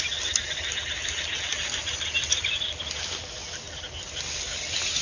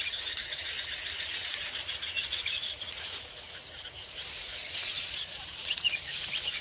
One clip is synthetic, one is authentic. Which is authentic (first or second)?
first